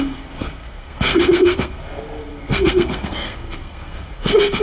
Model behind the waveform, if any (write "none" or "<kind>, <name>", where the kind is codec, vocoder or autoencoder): codec, SNAC